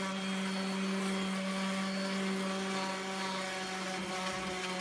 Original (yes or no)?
yes